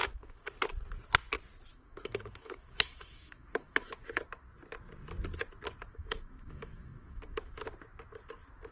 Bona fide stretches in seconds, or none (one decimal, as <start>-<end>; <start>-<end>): 0.5-1.7; 4.2-5.9; 7.5-8.7